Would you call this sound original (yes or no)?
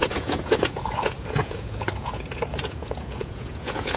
no